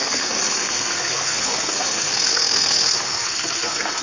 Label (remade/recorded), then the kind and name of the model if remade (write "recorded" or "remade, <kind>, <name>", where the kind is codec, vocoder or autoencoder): remade, codec, SNAC